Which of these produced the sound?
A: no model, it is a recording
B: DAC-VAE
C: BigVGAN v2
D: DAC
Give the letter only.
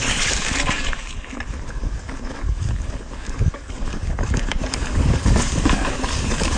D